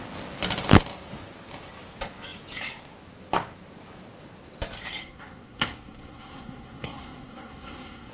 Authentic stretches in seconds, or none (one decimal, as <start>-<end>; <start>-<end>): 0.0-5.0